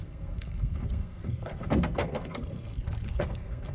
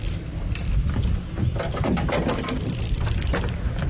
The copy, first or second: first